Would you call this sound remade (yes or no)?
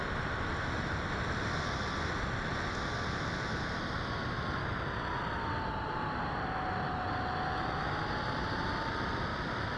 no